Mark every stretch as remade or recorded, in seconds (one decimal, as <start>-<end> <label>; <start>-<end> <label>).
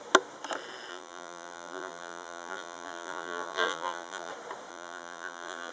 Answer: 0.0-0.9 recorded; 0.9-4.3 remade; 4.3-4.7 recorded; 4.7-5.7 remade